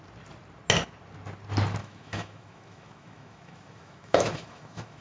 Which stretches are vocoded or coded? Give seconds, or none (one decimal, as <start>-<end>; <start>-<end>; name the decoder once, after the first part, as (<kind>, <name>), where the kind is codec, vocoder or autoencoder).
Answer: 1.8-5.0 (autoencoder, DAC-VAE)